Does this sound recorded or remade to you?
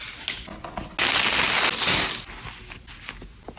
recorded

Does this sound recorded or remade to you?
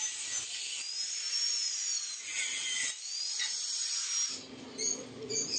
recorded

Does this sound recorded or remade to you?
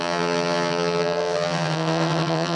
remade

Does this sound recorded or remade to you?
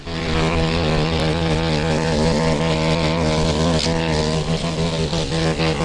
recorded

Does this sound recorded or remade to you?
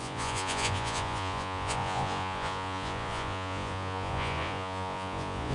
remade